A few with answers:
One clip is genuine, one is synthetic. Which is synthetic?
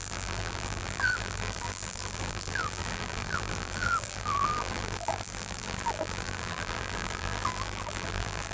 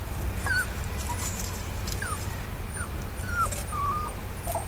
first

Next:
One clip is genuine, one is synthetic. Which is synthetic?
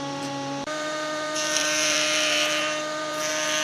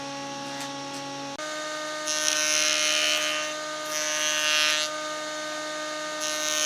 first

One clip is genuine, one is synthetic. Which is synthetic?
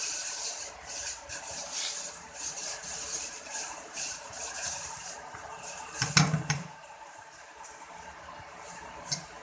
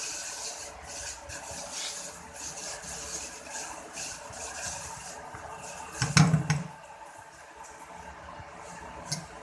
first